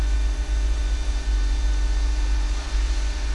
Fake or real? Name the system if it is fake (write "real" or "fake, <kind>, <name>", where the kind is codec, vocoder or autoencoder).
fake, vocoder, Vocos